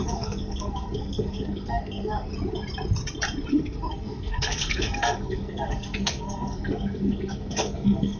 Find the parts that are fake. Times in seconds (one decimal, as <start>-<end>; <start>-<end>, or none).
0.0-2.3; 3.5-8.2